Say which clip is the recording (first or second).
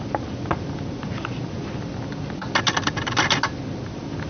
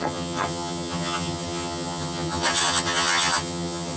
first